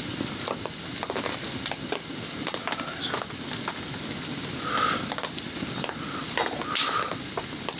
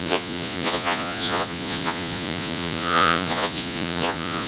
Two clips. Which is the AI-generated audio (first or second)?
second